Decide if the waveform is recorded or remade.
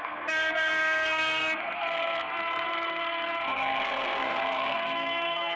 remade